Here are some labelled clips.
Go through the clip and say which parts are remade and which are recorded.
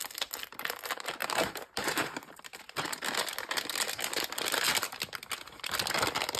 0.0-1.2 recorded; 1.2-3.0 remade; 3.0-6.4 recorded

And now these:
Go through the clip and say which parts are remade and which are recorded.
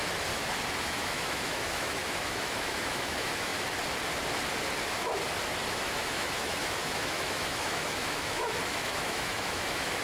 0.0-0.8 recorded; 0.8-3.5 remade; 3.5-5.7 recorded; 5.7-10.0 remade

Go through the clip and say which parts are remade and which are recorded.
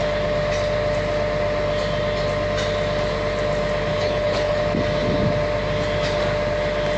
0.0-3.9 recorded; 3.9-4.6 remade; 4.6-7.0 recorded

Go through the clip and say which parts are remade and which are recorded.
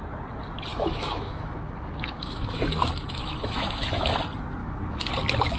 0.0-0.7 recorded; 0.7-4.1 remade; 4.1-4.6 recorded; 4.6-5.1 remade; 5.1-5.6 recorded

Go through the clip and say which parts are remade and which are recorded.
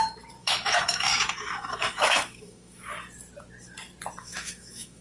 0.0-0.4 recorded; 0.4-2.9 remade; 2.9-4.2 recorded; 4.2-5.0 remade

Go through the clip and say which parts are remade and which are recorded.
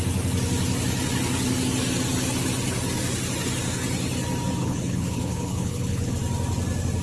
0.0-4.6 recorded; 4.6-6.1 remade; 6.1-7.0 recorded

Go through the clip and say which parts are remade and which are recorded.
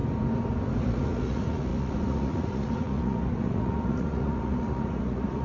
0.0-0.8 recorded; 0.8-5.4 remade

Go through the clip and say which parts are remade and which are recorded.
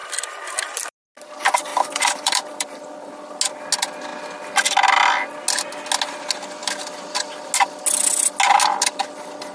0.0-0.9 remade; 0.9-1.7 recorded; 1.7-3.3 remade; 3.3-9.5 recorded